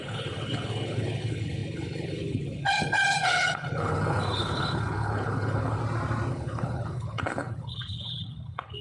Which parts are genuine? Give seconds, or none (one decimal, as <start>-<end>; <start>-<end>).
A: 5.8-6.3